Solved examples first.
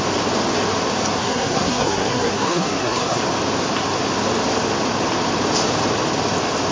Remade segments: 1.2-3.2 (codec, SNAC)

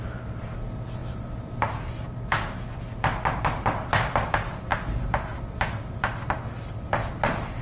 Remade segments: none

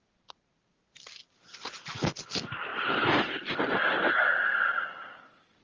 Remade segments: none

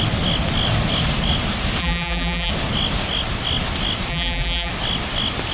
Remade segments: 1.8-2.5 (vocoder, BigVGAN v2); 4.1-4.7

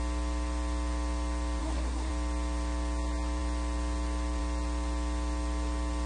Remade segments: 1.6-2.1 (codec, SNAC)

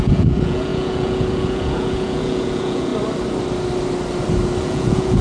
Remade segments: 0.0-2.9 (vocoder, Vocos); 4.6-5.2

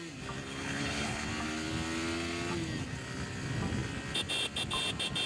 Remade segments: 0.4-1.3 (codec, HILCodec)